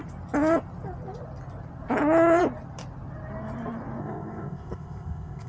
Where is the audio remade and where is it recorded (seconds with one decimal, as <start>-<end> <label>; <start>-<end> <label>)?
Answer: 0.0-4.0 recorded; 4.0-5.5 remade